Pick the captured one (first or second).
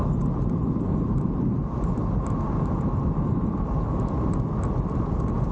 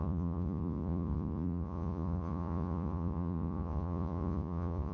first